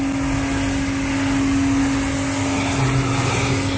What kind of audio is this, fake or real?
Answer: real